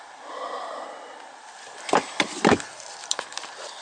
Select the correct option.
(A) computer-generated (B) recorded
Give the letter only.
B